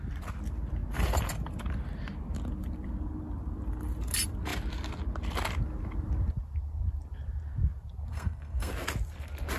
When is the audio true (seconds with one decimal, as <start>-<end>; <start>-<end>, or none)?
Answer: 0.0-8.1; 8.7-9.6